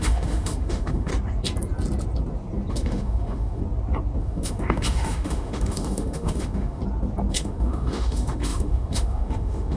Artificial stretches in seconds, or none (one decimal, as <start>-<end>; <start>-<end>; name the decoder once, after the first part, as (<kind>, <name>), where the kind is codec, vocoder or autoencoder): 0.0-1.1 (autoencoder, DAC-VAE); 2.7-3.6; 4.2-6.8; 7.3-9.8